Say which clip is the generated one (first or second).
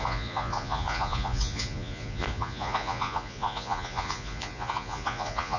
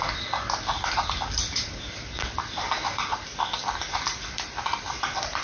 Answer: first